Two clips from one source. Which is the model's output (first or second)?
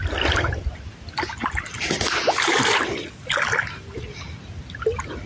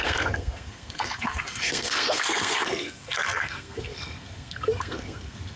second